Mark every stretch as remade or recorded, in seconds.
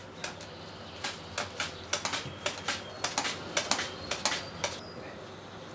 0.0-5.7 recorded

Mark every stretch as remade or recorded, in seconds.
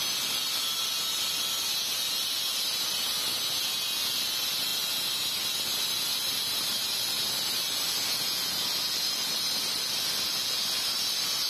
0.0-11.5 recorded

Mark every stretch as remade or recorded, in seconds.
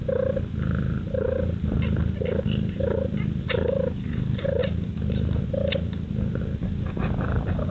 0.0-7.7 recorded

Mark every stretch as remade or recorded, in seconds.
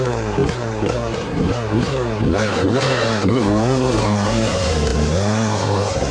0.0-6.1 remade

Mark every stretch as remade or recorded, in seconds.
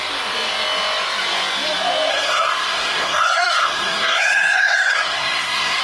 0.0-2.1 recorded; 2.1-5.8 remade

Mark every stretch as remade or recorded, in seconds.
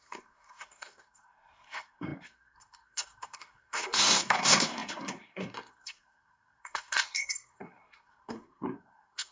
0.0-9.3 remade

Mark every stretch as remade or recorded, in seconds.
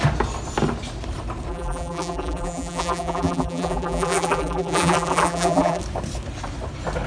0.0-1.5 recorded; 1.5-5.8 remade; 5.8-7.1 recorded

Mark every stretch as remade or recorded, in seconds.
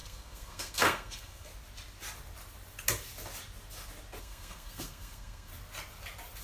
0.0-1.5 remade; 1.5-4.2 recorded; 4.2-5.5 remade; 5.5-6.4 recorded